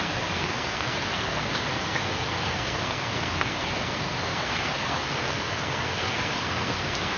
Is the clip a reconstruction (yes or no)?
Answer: yes